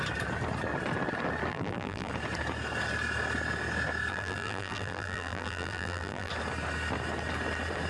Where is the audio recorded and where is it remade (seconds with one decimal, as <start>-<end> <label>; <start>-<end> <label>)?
0.0-1.5 recorded; 1.5-2.1 remade; 2.1-4.1 recorded; 4.1-6.3 remade; 6.3-7.9 recorded